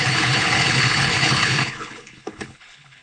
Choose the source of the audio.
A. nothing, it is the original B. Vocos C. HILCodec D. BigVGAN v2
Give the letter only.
C